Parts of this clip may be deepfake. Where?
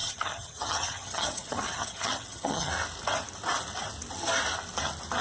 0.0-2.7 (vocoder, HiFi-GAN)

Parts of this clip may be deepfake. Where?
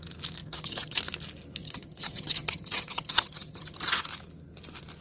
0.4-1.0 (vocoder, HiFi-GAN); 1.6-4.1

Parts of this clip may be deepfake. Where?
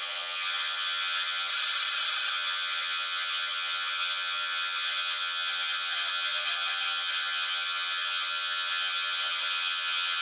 0.0-1.5 (vocoder, HiFi-GAN); 2.3-10.2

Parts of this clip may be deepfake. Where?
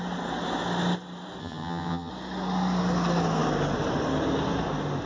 1.4-2.1 (vocoder, HiFi-GAN)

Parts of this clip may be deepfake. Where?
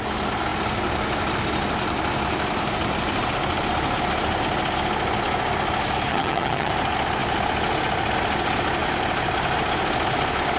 6.1-6.7 (vocoder, HiFi-GAN)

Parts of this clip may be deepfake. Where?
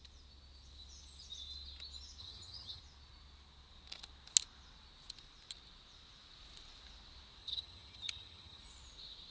2.2-2.8 (vocoder, HiFi-GAN); 7.4-8.6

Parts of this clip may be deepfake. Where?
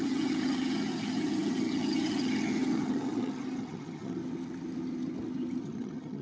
0.0-4.2 (vocoder, HiFi-GAN); 5.6-6.2